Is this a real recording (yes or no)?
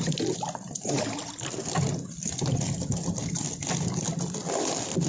yes